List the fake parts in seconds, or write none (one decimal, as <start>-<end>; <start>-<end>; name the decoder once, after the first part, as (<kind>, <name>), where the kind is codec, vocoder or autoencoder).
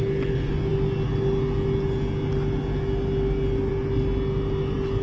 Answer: none